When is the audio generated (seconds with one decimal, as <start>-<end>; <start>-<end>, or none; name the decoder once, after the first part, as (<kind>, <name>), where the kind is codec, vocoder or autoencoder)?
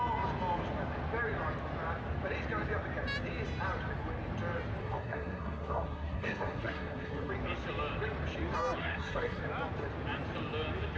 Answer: 4.8-7.3 (codec, SNAC); 8.8-9.4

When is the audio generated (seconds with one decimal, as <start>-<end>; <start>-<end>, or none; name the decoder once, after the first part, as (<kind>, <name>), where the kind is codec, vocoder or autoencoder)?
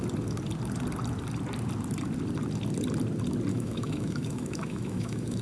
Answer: 3.5-5.4 (autoencoder, DAC-VAE)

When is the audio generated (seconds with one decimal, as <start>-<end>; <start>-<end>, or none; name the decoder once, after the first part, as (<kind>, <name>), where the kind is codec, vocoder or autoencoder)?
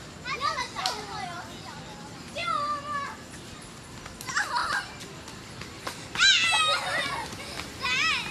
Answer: none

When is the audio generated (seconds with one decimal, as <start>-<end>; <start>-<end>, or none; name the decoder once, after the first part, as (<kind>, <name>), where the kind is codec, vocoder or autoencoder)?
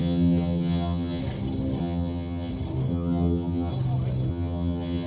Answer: 0.0-1.2 (vocoder, HiFi-GAN); 1.8-2.5; 2.9-3.7; 4.3-5.1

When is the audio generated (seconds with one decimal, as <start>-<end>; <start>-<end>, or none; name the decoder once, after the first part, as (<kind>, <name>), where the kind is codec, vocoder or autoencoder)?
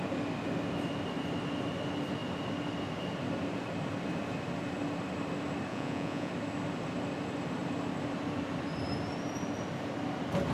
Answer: 5.7-6.3 (vocoder, Vocos)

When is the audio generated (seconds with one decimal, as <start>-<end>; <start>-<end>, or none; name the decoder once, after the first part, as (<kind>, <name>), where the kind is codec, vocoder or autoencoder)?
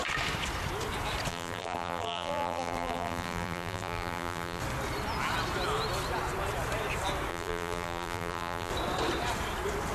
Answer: 1.3-4.6 (vocoder, BigVGAN v2); 7.3-8.7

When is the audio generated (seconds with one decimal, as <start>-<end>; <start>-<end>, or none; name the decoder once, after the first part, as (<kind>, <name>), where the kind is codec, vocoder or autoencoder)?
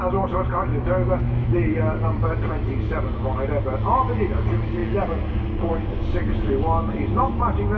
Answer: 0.7-1.5 (autoencoder, DAC-VAE)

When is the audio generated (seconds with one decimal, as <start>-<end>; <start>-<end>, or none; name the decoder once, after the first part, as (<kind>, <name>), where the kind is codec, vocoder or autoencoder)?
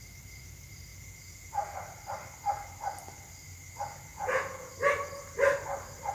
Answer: 0.9-1.8 (vocoder, Vocos); 4.1-4.7